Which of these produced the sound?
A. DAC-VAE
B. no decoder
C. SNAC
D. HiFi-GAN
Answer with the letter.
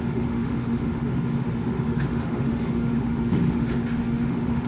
A